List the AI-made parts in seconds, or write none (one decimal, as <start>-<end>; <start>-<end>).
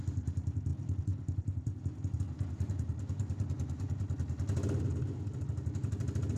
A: 0.7-2.2